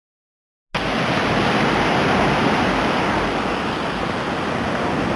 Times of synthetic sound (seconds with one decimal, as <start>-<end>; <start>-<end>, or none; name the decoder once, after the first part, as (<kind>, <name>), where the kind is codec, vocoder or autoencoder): none